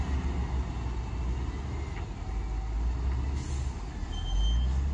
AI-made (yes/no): no